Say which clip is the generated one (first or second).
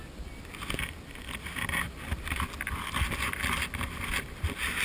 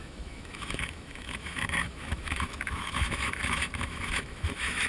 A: second